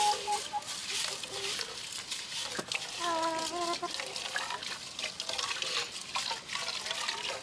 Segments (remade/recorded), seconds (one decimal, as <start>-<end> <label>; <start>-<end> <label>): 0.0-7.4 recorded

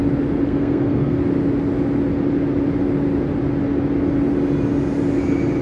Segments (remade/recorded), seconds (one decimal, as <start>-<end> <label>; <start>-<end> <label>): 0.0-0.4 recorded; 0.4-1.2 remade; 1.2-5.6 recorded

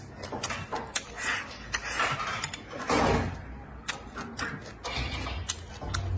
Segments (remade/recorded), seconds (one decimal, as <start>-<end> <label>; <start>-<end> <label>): 0.0-6.2 recorded

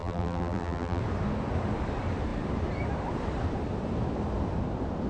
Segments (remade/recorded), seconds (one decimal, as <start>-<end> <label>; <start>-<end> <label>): 0.0-1.0 remade; 1.0-5.1 recorded

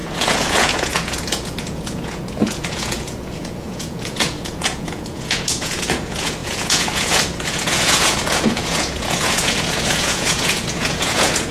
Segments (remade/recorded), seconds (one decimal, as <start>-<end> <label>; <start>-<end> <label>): 0.0-11.5 remade

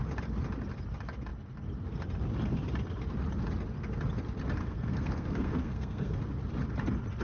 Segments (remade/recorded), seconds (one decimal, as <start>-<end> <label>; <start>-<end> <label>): 0.0-4.6 recorded; 4.6-6.2 remade; 6.2-7.2 recorded

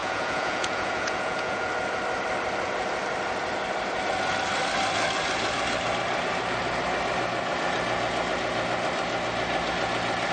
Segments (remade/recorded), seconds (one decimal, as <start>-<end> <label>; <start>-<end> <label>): 0.0-1.7 remade; 1.7-10.3 recorded